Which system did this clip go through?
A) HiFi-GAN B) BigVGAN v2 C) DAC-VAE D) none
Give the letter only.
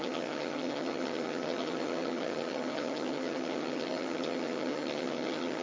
A